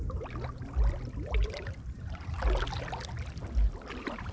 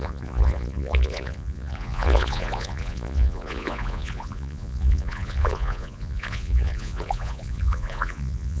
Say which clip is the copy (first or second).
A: second